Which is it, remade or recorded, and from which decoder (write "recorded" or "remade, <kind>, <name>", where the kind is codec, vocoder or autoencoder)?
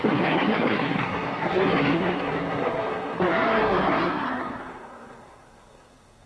remade, codec, SNAC